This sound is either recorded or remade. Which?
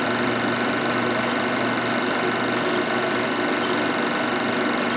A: recorded